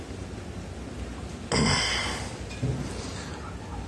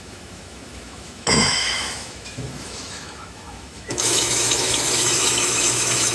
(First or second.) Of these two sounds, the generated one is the second